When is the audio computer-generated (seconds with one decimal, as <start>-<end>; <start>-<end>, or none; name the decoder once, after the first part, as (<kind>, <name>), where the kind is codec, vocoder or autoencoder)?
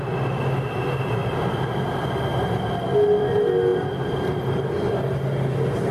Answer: none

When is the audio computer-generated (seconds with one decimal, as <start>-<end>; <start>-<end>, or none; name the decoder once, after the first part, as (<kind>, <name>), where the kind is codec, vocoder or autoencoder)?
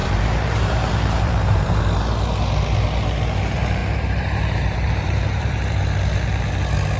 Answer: 0.0-1.8 (vocoder, BigVGAN v2); 3.8-5.8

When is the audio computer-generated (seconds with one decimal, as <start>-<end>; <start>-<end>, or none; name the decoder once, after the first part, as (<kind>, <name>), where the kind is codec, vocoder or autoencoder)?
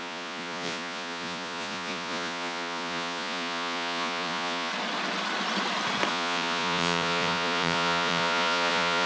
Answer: 0.0-4.7 (vocoder, Vocos); 6.1-9.1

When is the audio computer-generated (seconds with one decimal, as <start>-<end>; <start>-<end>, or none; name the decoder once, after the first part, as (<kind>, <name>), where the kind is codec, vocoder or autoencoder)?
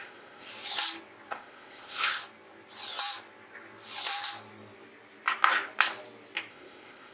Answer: 0.0-0.5 (codec, ZipCodec); 1.3-2.2; 6.5-7.1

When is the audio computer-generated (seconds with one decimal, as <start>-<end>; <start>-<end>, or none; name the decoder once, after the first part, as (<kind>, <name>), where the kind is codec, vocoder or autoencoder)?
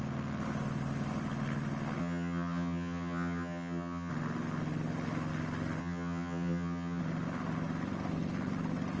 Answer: 2.0-4.1 (vocoder, HiFi-GAN); 5.8-7.0